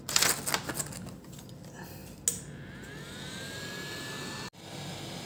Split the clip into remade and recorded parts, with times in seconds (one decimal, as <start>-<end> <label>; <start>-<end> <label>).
0.0-5.3 recorded